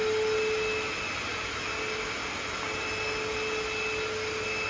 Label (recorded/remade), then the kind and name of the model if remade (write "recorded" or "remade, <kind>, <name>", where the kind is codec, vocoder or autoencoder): recorded